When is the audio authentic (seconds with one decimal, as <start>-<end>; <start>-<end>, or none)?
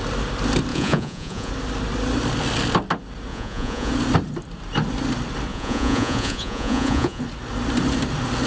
0.0-0.7; 1.5-3.3; 3.9-5.5; 7.2-8.5